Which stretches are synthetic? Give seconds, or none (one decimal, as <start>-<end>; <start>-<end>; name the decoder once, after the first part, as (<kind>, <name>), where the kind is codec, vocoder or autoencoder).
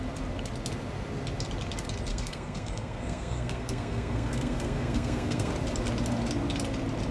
2.1-5.5 (codec, SNAC)